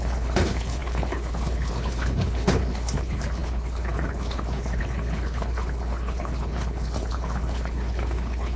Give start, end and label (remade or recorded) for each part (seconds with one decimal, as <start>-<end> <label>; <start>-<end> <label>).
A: 0.0-8.6 remade